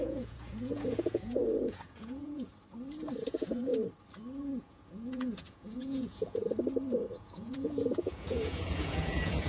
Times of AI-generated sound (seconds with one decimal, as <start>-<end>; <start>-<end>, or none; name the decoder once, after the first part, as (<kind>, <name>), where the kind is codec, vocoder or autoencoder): 0.0-2.5 (vocoder, Vocos); 3.2-3.7; 4.6-6.4; 7.1-9.5